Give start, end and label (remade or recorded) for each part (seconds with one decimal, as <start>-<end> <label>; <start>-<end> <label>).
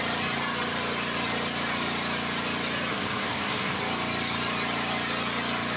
0.0-2.9 recorded; 2.9-3.8 remade; 3.8-5.8 recorded